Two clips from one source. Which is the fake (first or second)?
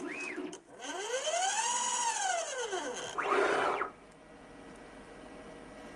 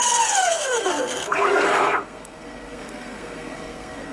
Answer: second